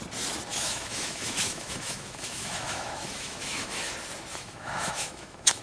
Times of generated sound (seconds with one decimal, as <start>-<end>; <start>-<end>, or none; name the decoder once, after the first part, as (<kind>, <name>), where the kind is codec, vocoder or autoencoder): 0.5-3.9 (autoencoder, DAC-VAE); 4.3-5.6